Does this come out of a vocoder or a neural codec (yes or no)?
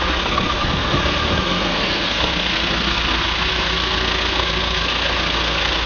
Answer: yes